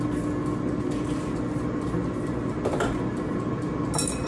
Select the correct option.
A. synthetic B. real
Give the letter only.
B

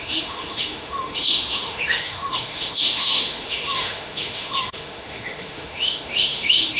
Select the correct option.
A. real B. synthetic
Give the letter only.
B